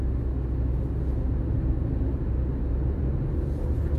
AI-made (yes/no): no